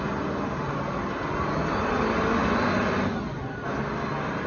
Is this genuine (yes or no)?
yes